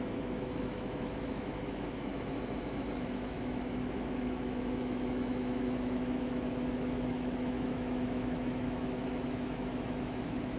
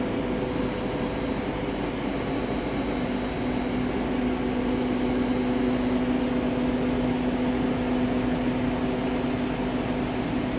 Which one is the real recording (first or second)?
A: second